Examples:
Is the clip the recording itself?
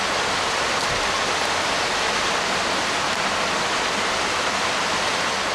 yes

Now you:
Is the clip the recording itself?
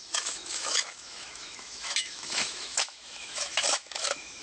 no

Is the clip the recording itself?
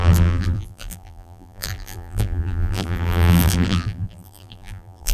no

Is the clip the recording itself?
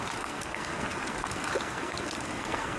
no